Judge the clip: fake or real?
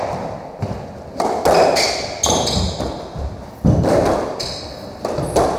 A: real